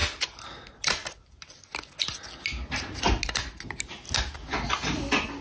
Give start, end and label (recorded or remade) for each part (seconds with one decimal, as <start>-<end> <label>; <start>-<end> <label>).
0.0-5.4 recorded